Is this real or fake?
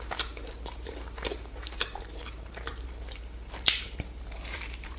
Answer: fake